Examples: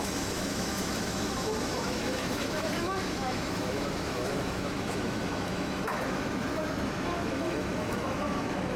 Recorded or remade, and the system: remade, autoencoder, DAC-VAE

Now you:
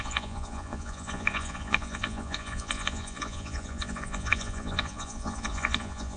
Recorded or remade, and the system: remade, vocoder, Vocos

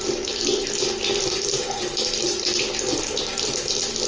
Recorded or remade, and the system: recorded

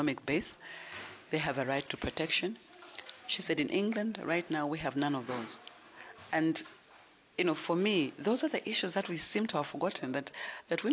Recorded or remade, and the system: recorded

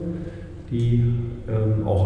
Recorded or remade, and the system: recorded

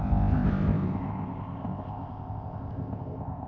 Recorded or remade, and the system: remade, codec, ZipCodec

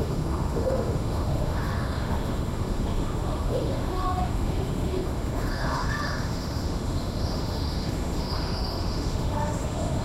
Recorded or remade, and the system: remade, autoencoder, DAC-VAE